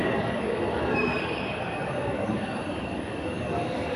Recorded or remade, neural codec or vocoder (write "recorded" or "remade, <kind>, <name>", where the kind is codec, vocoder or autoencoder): remade, codec, DAC